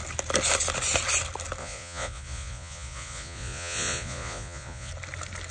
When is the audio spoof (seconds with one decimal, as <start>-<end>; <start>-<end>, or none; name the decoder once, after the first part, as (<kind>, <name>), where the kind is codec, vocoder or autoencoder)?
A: 1.6-4.9 (vocoder, Vocos)